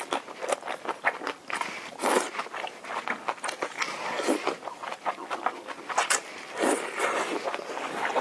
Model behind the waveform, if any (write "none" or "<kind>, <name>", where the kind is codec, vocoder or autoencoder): none